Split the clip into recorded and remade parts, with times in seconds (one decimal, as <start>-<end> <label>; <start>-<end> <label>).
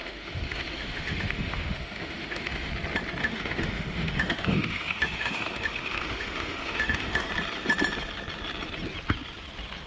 0.0-2.7 remade; 2.7-3.2 recorded; 3.2-7.3 remade; 7.3-9.9 recorded